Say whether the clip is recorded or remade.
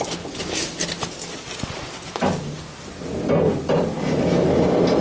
recorded